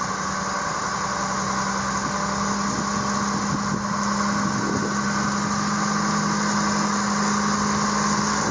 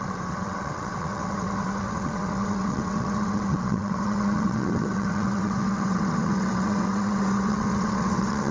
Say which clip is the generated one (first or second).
second